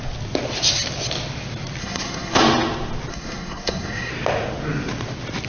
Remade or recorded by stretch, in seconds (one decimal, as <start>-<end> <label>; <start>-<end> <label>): 0.0-1.8 recorded; 1.8-2.4 remade; 2.4-3.1 recorded; 3.1-4.1 remade; 4.1-5.5 recorded